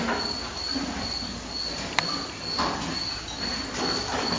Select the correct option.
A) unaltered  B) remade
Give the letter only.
A